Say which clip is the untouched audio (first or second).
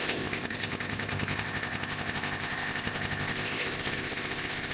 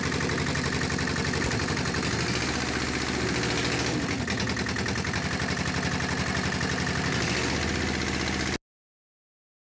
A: second